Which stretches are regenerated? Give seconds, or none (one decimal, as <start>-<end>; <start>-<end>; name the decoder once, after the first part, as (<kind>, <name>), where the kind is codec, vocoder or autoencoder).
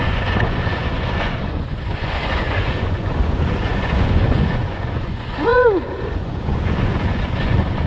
0.0-7.9 (vocoder, Vocos)